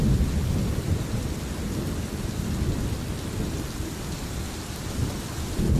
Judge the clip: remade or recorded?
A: remade